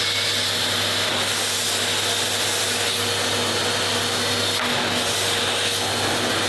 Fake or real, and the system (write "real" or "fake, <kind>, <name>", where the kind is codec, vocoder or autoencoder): real